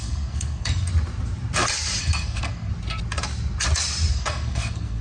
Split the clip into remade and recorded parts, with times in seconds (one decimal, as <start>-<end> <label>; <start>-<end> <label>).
0.0-0.9 remade; 0.9-2.0 recorded; 2.0-2.7 remade; 2.7-4.1 recorded; 4.1-5.0 remade

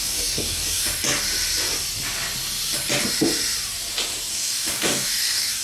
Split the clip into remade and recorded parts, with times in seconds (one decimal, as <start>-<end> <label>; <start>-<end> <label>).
0.0-0.9 remade; 0.9-4.3 recorded; 4.3-5.6 remade

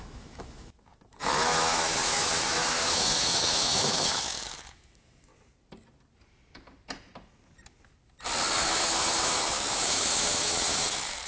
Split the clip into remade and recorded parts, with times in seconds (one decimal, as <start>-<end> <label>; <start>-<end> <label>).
0.0-5.3 remade; 5.3-8.6 recorded; 8.6-11.3 remade

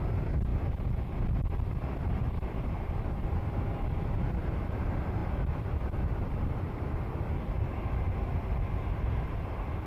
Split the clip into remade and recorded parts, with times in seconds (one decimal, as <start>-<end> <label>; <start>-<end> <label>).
0.0-9.9 recorded